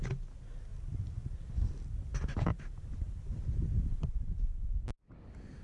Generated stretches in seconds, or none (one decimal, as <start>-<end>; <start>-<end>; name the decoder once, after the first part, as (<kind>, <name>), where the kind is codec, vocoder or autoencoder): none